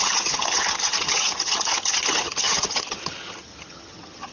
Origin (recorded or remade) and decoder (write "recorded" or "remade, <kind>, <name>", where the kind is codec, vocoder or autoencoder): remade, vocoder, HiFi-GAN